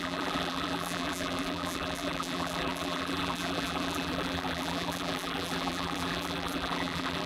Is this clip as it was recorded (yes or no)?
no